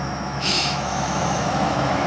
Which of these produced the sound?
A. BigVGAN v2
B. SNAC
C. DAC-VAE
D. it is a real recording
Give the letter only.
C